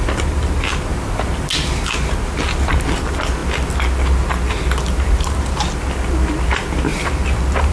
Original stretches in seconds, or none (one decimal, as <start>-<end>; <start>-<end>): 0.0-7.7